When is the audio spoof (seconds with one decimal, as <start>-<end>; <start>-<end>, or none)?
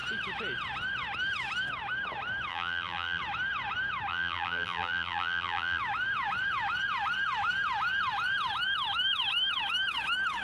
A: 2.5-3.2; 4.1-5.8